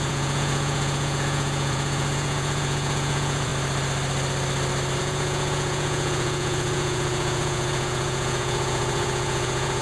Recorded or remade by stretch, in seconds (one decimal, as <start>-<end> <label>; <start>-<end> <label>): 0.0-3.5 remade; 3.5-5.0 recorded; 5.0-9.8 remade